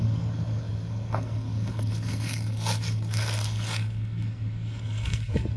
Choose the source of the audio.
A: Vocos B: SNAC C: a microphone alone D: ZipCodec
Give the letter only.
B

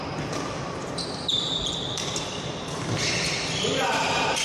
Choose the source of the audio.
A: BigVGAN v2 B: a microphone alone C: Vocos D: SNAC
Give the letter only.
A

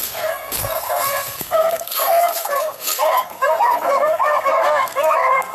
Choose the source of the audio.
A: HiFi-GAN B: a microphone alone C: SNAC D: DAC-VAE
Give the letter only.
C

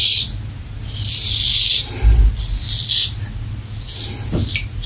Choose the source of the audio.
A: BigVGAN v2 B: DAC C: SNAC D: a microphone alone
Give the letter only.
D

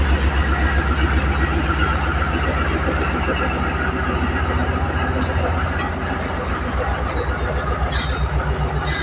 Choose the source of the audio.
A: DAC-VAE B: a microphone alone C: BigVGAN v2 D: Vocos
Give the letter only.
B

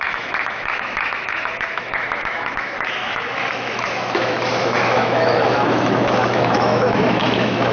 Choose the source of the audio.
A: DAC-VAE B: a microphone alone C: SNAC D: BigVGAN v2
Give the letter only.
A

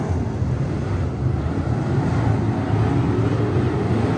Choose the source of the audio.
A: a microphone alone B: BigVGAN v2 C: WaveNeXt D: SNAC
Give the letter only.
A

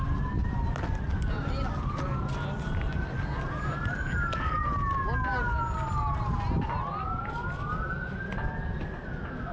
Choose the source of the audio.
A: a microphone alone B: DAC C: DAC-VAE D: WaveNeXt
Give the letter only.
A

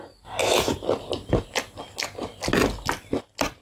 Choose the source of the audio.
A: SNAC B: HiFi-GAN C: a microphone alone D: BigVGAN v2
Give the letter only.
C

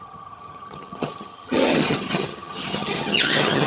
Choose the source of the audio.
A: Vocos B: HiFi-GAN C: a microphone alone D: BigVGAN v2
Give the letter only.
B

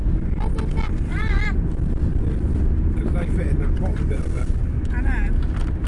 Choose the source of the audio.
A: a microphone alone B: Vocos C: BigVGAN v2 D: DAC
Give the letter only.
A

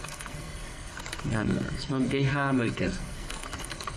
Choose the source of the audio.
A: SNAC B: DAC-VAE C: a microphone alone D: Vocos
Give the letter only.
A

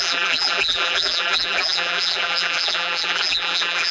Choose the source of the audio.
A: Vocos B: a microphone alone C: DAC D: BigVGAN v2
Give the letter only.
D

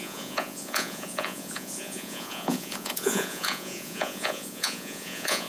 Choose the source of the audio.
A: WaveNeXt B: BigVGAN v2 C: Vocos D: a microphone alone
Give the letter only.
C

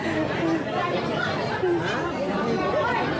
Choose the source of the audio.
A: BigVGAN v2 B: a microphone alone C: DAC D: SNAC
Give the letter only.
A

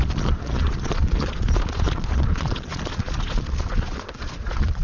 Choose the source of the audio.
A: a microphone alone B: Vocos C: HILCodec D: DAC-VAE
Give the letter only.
B